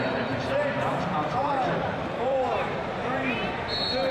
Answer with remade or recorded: remade